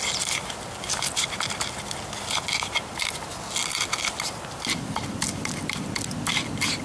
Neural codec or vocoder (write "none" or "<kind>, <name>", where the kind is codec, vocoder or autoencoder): none